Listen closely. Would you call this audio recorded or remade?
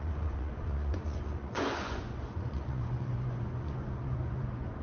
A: remade